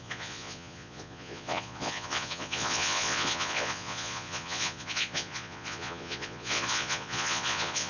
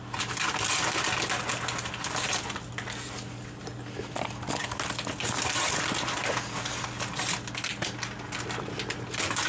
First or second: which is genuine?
second